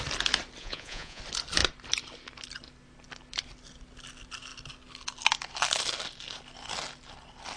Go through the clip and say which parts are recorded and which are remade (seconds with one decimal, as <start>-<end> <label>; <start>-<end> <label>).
0.0-0.6 recorded; 0.6-1.2 remade; 1.2-7.6 recorded

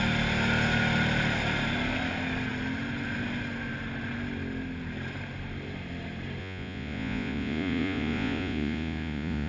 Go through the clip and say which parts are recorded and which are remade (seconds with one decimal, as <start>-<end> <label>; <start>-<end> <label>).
0.0-6.4 recorded; 6.4-9.5 remade

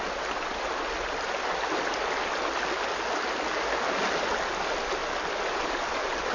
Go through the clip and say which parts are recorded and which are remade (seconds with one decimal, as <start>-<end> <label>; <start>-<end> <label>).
0.0-6.3 recorded

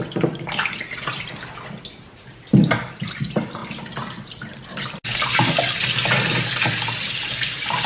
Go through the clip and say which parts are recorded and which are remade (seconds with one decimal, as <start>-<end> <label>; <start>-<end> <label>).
0.0-7.9 recorded

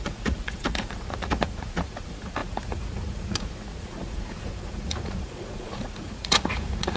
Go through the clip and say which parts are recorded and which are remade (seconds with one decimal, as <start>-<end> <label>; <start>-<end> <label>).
0.0-7.0 remade

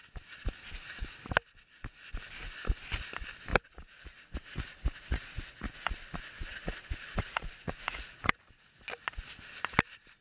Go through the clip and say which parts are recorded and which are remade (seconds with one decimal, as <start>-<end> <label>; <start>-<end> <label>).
0.0-3.5 recorded; 3.5-8.4 remade; 8.4-10.2 recorded

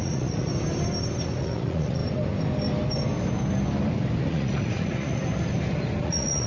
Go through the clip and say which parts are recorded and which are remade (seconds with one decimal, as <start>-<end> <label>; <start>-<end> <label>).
0.0-0.5 remade; 0.5-1.4 recorded; 1.4-2.0 remade; 2.0-4.2 recorded; 4.2-5.2 remade; 5.2-6.0 recorded; 6.0-6.5 remade